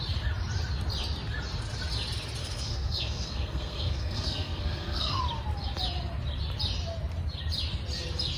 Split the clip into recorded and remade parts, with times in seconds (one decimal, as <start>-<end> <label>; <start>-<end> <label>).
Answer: 0.0-2.4 recorded; 2.4-5.2 remade; 5.2-8.4 recorded